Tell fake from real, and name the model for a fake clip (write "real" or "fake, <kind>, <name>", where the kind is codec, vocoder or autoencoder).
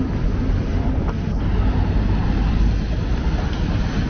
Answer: real